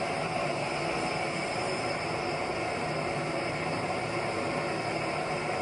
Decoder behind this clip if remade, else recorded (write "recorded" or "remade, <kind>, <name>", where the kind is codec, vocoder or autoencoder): recorded